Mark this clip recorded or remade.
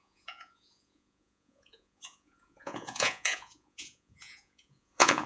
remade